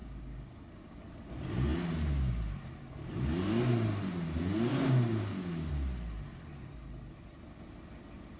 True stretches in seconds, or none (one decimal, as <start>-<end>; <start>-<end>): 1.0-4.7; 5.7-8.4